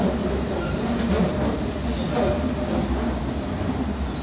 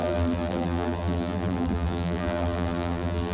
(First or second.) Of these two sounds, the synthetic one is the second